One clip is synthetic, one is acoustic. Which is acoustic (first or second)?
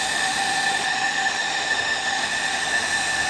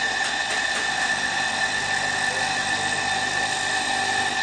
second